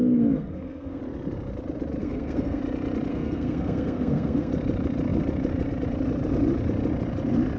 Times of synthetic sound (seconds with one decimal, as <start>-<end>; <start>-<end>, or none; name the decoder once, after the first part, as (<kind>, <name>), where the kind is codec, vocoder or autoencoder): 0.0-1.0 (codec, SNAC); 2.0-2.6; 3.1-4.5